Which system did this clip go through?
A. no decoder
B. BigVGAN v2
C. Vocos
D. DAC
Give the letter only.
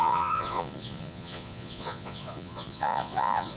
C